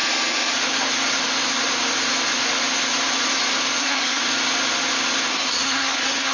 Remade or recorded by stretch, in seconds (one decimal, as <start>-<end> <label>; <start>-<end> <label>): 0.0-3.8 recorded; 3.8-4.2 remade; 4.2-5.3 recorded; 5.3-6.3 remade